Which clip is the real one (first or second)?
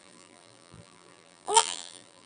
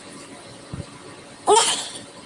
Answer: second